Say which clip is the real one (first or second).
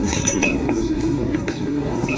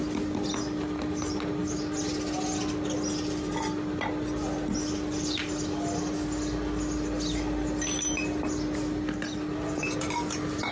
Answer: second